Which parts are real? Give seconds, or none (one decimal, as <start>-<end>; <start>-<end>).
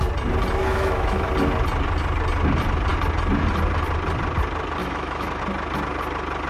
0.0-0.6; 1.3-4.8; 5.4-6.5